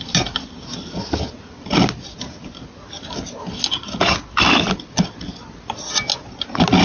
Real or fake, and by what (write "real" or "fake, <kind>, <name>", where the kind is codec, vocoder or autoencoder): real